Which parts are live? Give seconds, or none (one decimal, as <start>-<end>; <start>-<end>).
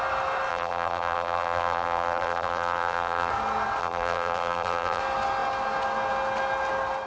0.0-0.5; 3.3-3.8; 5.0-7.1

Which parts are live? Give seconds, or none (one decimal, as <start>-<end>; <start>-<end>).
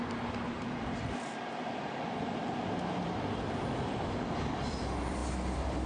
none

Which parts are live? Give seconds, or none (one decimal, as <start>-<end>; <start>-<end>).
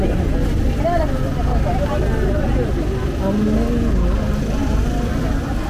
0.0-5.7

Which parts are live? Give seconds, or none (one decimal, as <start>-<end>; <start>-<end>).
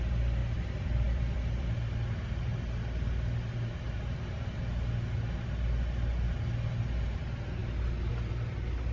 0.0-0.4; 1.7-8.9